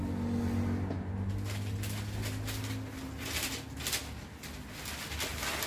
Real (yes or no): yes